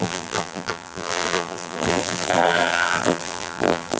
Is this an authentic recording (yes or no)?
no